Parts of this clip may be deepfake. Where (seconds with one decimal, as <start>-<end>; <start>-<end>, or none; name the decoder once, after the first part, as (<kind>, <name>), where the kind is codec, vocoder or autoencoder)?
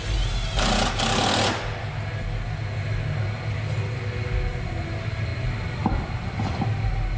none